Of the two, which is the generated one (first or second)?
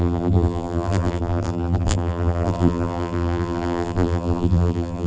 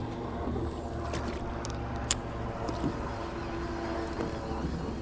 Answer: first